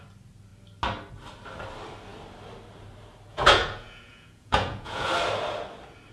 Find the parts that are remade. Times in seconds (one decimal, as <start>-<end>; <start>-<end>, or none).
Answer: 3.3-5.1